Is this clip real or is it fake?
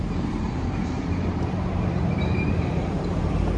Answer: fake